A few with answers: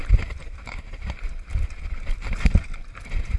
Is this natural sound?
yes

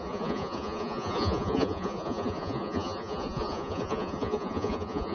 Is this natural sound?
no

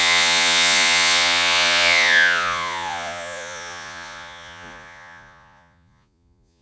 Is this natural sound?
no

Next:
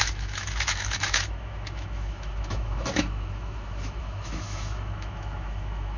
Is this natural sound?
no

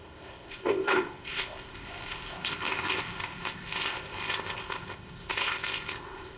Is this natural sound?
no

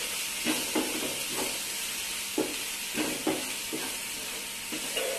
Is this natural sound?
yes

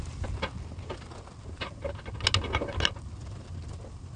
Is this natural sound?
yes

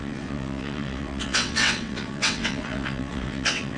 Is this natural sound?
no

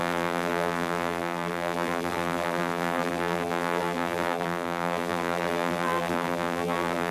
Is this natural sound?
no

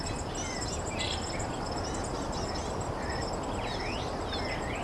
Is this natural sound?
yes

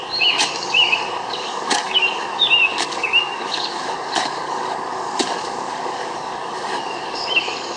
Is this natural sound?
no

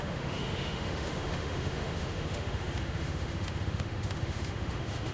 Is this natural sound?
no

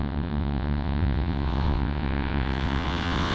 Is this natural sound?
no